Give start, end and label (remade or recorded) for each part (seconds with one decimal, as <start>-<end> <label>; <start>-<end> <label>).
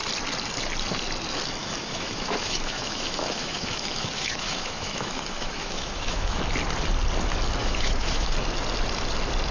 0.0-1.6 recorded; 1.6-6.4 remade; 6.4-7.6 recorded; 7.6-8.3 remade; 8.3-9.5 recorded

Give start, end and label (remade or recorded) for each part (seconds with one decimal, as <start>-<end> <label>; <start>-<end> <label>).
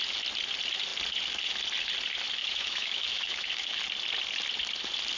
0.0-2.4 recorded; 2.4-3.8 remade; 3.8-5.2 recorded